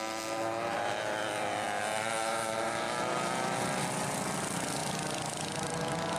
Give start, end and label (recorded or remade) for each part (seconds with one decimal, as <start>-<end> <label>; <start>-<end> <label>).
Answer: 0.0-1.2 recorded; 1.2-1.8 remade; 1.8-6.2 recorded